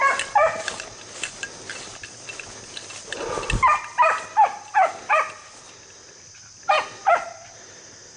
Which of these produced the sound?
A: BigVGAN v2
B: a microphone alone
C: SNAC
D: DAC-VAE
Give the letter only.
B